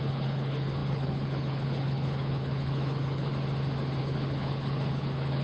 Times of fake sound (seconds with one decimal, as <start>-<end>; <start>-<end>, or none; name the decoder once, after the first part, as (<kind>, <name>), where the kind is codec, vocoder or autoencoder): 0.0-3.3 (codec, HILCodec); 4.0-5.4